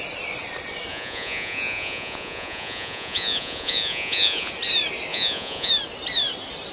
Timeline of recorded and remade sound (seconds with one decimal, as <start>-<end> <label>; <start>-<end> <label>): 0.0-0.9 recorded; 0.9-4.5 remade; 4.5-5.1 recorded; 5.1-5.7 remade; 5.7-6.7 recorded